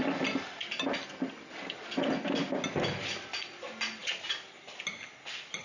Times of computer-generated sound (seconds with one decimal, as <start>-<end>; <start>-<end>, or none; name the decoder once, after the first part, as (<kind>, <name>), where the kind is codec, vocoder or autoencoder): none